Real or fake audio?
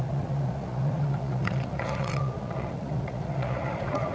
fake